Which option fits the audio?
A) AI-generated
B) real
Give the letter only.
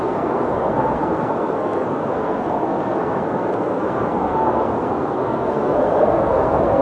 A